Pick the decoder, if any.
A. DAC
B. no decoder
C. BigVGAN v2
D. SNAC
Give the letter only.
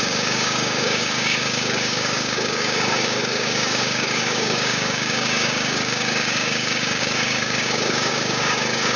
A